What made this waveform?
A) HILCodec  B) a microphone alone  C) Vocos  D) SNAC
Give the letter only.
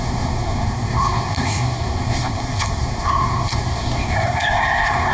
D